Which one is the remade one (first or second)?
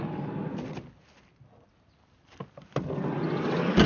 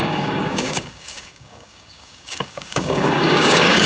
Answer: second